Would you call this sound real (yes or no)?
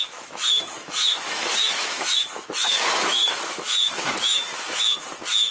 no